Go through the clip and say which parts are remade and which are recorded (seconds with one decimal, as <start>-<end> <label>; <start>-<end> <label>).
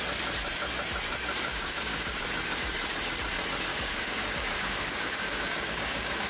0.0-1.5 recorded; 1.5-2.2 remade; 2.2-3.7 recorded; 3.7-6.3 remade